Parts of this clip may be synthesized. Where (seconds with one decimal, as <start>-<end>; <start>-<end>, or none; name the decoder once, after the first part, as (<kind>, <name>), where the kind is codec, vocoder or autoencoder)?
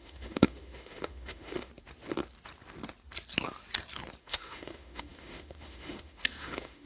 0.0-1.7 (autoencoder, DAC-VAE); 4.2-6.9